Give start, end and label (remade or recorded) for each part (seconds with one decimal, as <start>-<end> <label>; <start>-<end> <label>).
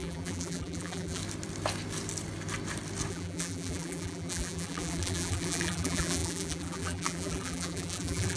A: 0.0-1.2 remade; 1.2-3.1 recorded; 3.1-8.4 remade